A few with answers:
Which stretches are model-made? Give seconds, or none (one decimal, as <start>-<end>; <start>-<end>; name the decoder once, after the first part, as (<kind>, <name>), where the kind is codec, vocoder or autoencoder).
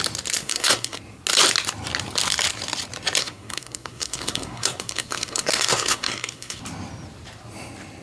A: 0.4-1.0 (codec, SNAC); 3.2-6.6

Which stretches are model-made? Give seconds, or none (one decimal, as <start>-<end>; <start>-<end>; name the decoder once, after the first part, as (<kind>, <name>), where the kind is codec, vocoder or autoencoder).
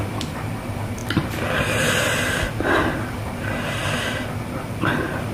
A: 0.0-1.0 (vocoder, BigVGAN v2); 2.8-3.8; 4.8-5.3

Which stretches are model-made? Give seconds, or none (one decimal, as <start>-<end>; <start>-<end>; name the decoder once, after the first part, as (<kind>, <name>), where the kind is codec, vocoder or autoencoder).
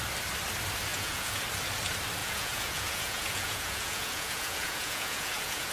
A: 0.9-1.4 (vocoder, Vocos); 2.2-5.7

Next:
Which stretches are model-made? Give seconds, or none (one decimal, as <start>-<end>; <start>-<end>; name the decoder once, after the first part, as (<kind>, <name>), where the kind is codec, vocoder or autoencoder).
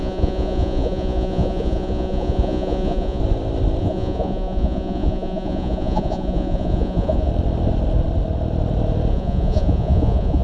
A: 0.0-3.2 (vocoder, Vocos); 3.8-7.3; 9.1-10.4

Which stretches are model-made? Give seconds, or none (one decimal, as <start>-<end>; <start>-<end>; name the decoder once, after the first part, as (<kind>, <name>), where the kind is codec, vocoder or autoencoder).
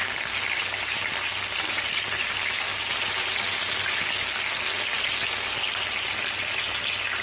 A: 0.0-4.3 (vocoder, BigVGAN v2)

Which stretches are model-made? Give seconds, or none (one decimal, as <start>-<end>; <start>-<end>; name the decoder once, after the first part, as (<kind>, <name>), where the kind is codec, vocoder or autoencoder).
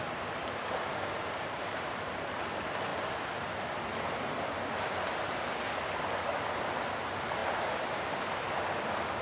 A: 0.4-2.3 (vocoder, BigVGAN v2)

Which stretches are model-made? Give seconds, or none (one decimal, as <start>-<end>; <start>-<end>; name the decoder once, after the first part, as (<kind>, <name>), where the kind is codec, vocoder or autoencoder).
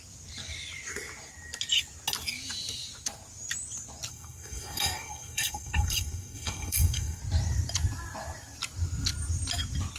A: 4.1-7.2 (codec, SNAC)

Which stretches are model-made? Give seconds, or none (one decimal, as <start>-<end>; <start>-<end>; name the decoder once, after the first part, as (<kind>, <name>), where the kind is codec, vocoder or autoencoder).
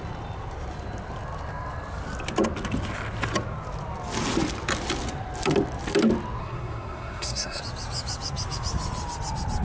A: 6.4-7.6 (codec, SNAC)